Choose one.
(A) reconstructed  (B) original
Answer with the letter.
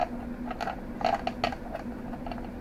B